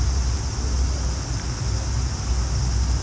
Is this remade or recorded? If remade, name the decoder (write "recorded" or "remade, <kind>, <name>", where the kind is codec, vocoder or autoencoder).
recorded